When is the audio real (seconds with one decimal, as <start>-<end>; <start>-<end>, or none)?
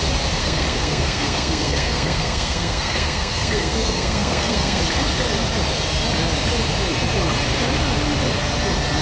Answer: 0.0-0.4; 4.8-9.0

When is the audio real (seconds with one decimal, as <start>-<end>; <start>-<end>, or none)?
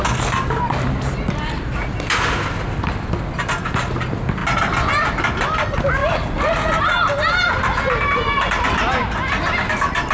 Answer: 0.0-10.1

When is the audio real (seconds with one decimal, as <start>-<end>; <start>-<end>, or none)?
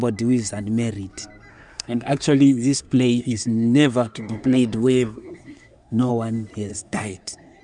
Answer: 0.0-1.5; 6.1-6.7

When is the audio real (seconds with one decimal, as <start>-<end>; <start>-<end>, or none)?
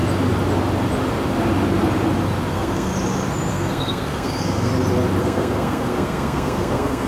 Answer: 0.0-2.5; 2.9-3.5; 4.7-5.2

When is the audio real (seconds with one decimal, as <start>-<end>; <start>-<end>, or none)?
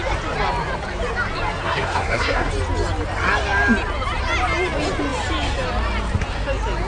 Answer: 0.0-1.6; 2.5-6.9